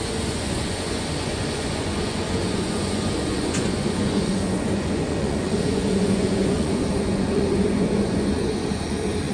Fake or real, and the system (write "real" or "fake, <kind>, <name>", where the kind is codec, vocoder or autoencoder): fake, vocoder, Vocos